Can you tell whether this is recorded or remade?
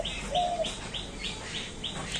recorded